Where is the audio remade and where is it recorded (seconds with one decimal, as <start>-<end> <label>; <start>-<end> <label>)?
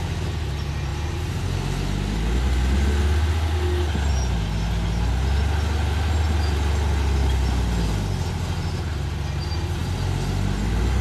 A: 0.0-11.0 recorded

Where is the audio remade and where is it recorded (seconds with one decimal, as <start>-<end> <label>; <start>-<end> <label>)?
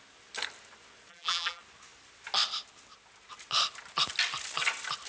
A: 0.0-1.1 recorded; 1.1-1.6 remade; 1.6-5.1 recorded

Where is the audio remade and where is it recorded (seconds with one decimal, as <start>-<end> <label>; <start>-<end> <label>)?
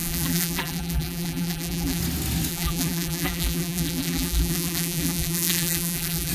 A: 0.0-2.0 remade; 2.0-2.5 recorded; 2.5-6.3 remade